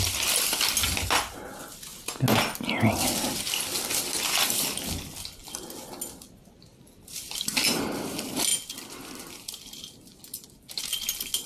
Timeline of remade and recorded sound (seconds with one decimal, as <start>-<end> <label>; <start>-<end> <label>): 0.0-11.5 recorded